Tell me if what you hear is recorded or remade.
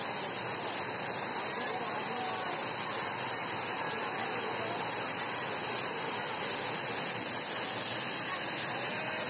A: recorded